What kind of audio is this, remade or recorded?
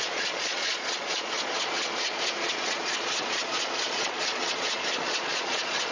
remade